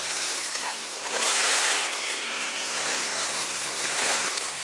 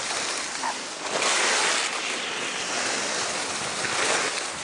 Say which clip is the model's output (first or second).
first